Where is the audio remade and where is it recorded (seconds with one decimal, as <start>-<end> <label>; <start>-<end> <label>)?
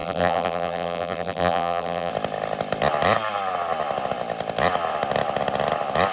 0.0-2.1 remade; 2.1-6.1 recorded